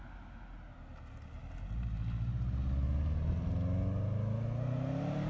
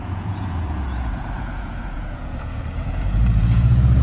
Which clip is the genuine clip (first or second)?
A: first